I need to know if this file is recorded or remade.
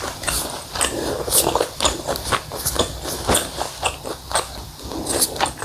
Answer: remade